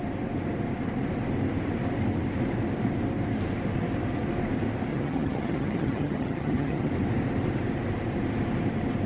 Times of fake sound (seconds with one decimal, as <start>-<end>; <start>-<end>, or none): 4.9-6.9